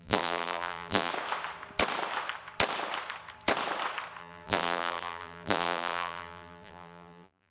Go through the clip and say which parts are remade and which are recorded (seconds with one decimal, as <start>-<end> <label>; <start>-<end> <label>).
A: 0.0-1.1 remade; 1.1-4.2 recorded; 4.2-7.5 remade